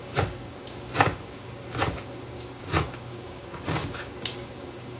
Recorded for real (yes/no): no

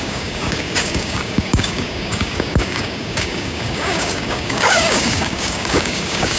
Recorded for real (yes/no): no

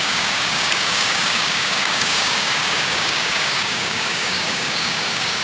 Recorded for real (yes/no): no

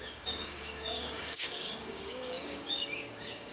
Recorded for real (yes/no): no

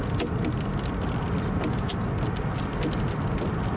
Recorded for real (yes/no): yes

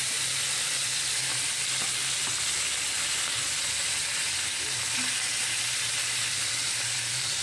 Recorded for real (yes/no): yes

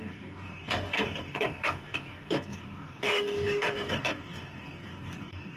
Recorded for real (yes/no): no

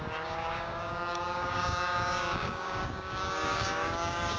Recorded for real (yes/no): no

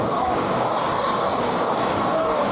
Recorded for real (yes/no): no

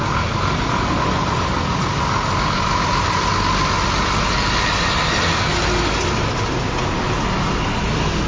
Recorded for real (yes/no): yes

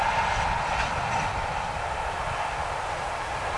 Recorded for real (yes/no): yes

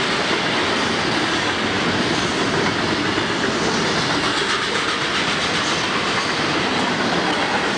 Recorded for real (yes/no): yes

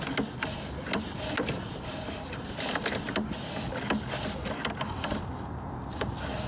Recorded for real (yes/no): yes